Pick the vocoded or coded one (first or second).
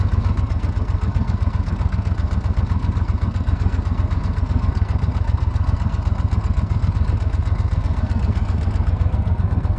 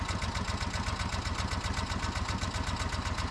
first